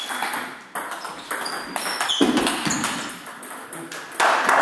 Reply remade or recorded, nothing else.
recorded